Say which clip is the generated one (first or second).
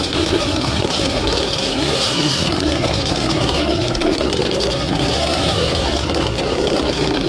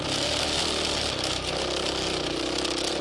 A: first